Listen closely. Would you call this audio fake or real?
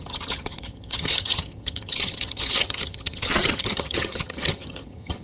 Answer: fake